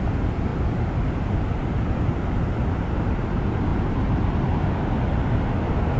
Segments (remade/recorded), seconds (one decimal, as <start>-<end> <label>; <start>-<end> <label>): 0.0-6.0 recorded